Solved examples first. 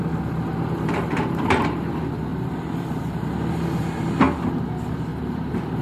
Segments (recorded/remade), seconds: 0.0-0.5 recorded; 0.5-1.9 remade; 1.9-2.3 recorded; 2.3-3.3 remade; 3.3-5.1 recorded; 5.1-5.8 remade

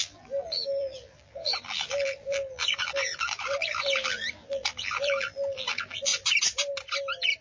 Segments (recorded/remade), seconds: 0.0-6.1 remade; 6.1-7.4 recorded

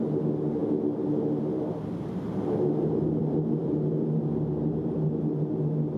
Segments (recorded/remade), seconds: 0.0-6.0 recorded